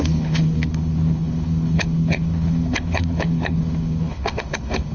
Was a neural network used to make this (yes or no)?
yes